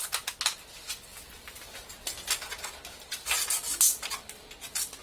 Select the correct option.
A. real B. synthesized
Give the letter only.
A